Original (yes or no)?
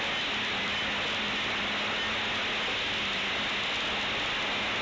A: yes